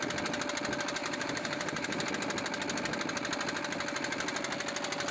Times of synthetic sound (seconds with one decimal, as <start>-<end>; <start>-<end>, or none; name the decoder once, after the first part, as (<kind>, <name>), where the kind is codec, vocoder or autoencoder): 1.0-2.1 (vocoder, BigVGAN v2)